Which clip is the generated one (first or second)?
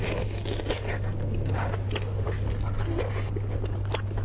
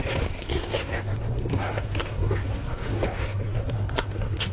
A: second